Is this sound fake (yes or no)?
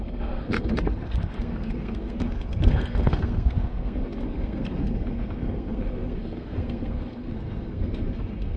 yes